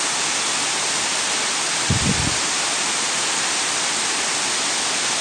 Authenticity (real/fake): real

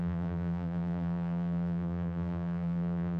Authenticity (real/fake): fake